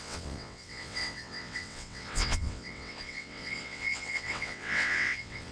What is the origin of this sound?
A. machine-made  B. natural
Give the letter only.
A